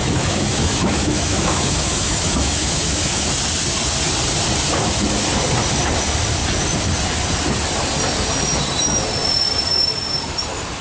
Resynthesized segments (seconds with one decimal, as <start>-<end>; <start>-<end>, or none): 0.0-3.3